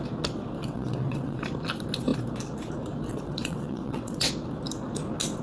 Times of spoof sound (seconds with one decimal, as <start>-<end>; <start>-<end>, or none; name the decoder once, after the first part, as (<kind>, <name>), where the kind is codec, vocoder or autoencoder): 0.6-1.4 (vocoder, WaveNeXt); 3.1-4.3